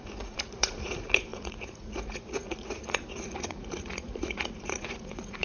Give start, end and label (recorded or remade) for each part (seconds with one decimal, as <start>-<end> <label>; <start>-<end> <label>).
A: 0.0-5.4 remade